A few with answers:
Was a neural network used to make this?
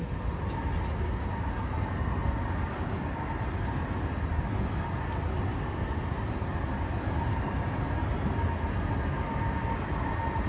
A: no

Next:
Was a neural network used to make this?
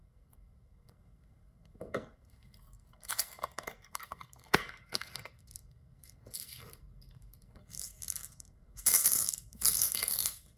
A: yes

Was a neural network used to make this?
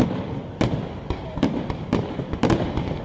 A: no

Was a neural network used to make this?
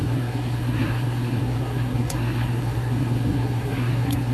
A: yes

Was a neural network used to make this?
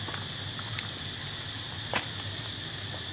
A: no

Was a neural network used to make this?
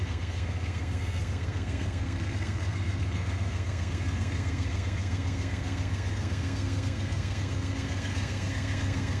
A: yes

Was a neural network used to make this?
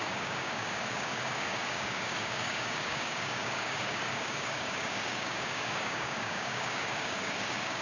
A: yes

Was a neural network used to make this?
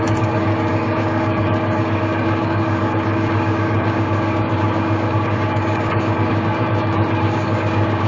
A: yes